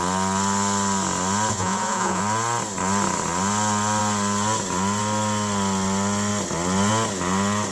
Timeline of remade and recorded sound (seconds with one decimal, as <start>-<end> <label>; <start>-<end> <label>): 0.0-1.5 recorded; 1.5-2.2 remade; 2.2-7.7 recorded

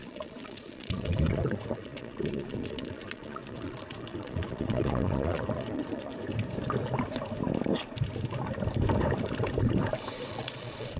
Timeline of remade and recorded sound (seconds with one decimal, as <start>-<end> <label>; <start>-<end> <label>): 0.0-6.1 remade; 6.1-10.3 recorded; 10.3-11.0 remade

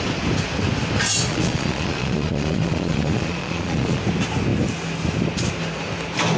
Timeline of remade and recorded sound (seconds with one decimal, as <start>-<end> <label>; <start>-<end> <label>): 0.0-1.3 recorded; 1.3-4.0 remade; 4.0-6.4 recorded

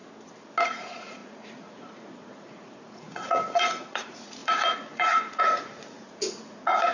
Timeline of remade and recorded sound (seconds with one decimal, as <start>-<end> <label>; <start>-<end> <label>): 0.0-0.7 recorded; 0.7-6.9 remade

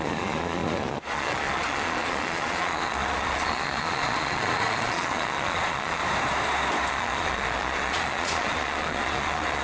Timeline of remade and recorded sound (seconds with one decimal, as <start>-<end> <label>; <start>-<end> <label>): 0.0-6.0 remade; 6.0-6.9 recorded; 6.9-9.6 remade

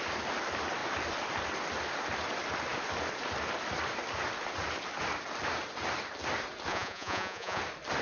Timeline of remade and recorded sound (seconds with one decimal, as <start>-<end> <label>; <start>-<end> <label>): 0.0-6.7 recorded; 6.7-7.6 remade; 7.6-8.0 recorded

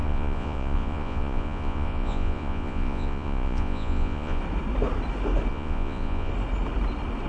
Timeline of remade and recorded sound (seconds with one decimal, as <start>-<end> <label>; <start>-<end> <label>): 0.0-4.4 remade; 4.4-5.5 recorded; 5.5-6.3 remade; 6.3-7.3 recorded